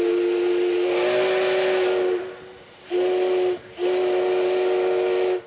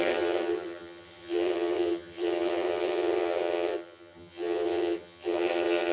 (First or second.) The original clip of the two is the first